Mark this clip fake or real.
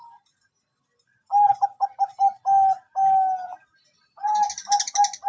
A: real